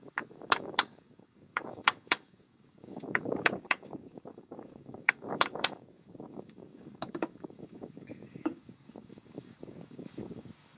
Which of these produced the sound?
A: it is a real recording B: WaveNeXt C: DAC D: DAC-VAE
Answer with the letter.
C